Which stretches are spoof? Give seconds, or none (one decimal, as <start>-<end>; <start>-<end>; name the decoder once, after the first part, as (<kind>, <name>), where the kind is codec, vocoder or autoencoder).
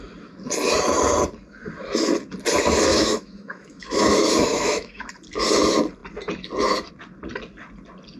2.9-5.1 (autoencoder, DAC-VAE)